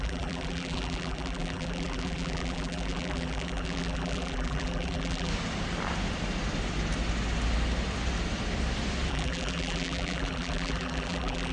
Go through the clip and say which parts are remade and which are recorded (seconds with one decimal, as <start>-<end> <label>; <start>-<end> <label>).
0.0-5.3 remade; 5.3-9.1 recorded; 9.1-11.5 remade